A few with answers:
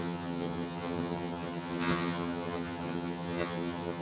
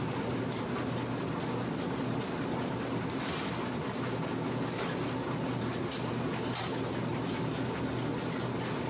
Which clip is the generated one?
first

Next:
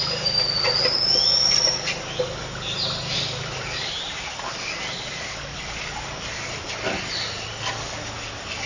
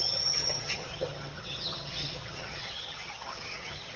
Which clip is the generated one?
second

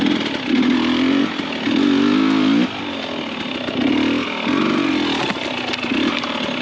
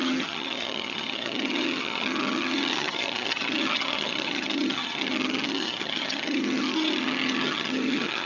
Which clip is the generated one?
second